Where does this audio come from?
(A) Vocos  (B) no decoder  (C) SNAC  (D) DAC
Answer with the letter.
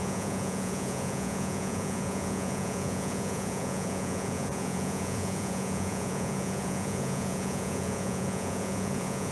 A